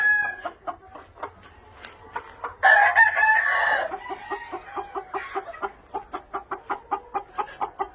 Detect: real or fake real